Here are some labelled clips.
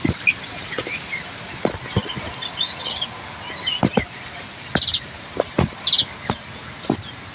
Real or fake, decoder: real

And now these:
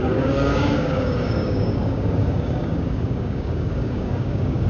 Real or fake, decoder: fake, codec, DAC